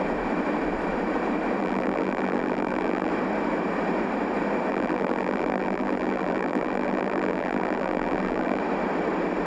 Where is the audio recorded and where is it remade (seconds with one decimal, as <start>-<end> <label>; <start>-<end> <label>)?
0.0-1.6 recorded; 1.6-3.1 remade; 3.1-4.7 recorded; 4.7-8.6 remade; 8.6-9.5 recorded